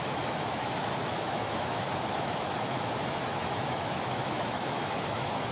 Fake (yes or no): yes